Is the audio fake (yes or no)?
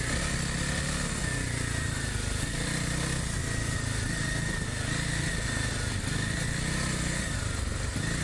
no